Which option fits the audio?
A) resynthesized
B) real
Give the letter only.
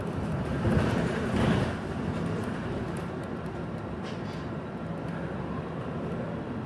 B